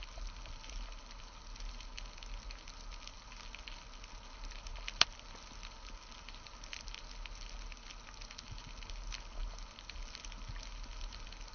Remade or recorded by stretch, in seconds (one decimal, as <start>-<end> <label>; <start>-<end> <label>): 0.0-11.5 recorded